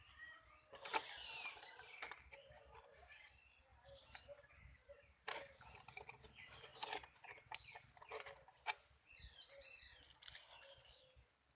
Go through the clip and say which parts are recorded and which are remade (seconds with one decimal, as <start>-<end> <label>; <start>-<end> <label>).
0.0-1.6 recorded; 1.6-3.7 remade; 3.7-4.6 recorded; 4.6-11.6 remade